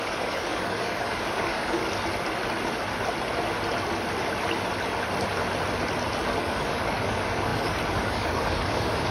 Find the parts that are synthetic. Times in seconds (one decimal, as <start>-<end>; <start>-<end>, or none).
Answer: 0.0-1.8; 6.4-9.1